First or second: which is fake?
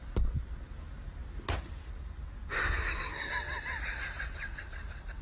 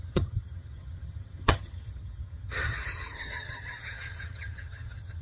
second